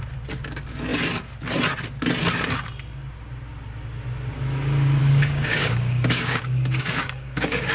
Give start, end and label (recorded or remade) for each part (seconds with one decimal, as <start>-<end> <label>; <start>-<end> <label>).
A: 0.0-5.0 recorded; 5.0-7.7 remade